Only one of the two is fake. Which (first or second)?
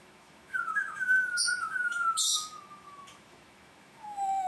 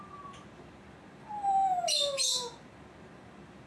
first